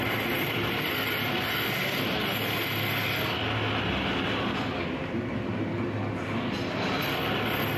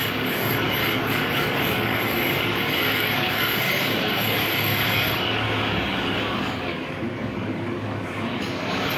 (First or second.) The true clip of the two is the first